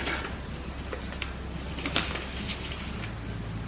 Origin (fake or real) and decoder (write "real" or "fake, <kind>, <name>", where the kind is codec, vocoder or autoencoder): real